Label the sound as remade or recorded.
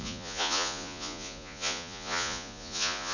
remade